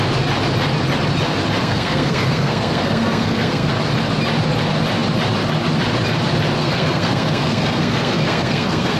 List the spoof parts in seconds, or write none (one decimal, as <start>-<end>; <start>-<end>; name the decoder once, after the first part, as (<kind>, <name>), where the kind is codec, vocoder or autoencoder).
1.6-3.7 (codec, SNAC); 6.6-9.0